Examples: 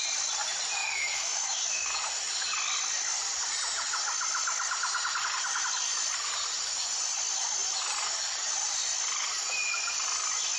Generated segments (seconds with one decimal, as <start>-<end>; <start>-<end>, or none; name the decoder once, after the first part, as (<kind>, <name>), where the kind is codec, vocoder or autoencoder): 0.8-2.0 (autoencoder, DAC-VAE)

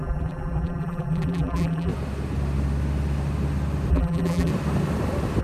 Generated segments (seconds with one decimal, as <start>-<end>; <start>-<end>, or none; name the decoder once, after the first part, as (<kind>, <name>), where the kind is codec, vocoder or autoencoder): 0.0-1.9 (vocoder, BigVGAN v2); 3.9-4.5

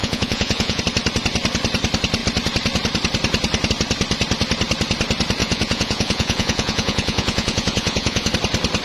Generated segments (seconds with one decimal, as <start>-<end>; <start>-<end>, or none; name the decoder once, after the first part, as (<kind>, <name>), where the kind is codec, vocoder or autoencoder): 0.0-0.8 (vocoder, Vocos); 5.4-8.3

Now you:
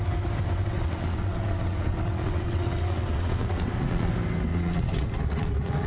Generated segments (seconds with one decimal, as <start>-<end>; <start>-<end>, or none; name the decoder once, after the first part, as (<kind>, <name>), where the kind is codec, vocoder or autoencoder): 0.6-4.1 (vocoder, WaveNeXt); 4.5-5.9

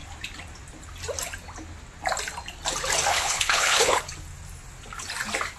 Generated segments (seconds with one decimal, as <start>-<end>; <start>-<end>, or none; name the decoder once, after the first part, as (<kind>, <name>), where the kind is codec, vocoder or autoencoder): 3.1-4.0 (codec, HILCodec)

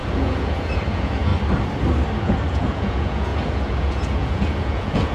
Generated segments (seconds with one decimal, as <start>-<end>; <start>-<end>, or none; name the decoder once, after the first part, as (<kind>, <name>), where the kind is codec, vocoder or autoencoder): 0.0-1.3 (vocoder, Vocos); 2.2-5.1

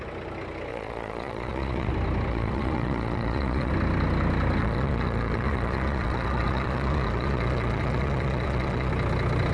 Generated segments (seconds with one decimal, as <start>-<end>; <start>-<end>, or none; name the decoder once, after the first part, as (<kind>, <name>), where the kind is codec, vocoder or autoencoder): 0.7-1.9 (vocoder, Vocos); 2.3-3.7; 4.6-8.9